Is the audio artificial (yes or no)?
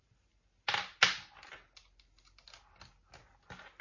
no